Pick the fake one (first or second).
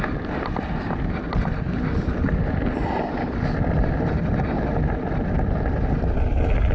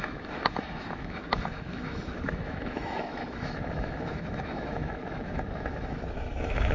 second